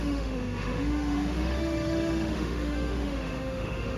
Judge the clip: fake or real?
fake